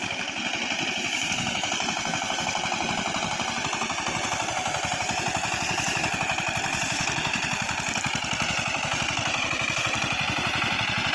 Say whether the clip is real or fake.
fake